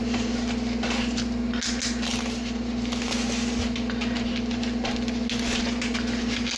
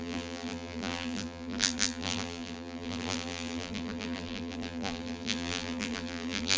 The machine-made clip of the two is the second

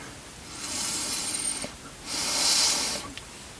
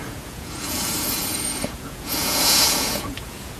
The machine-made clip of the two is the second